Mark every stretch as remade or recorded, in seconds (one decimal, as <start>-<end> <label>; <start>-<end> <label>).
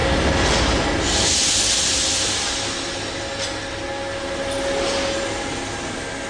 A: 0.0-6.3 recorded